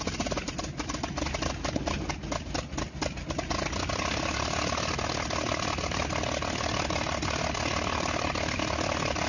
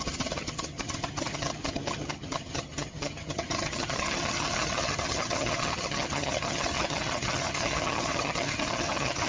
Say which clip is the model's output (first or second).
second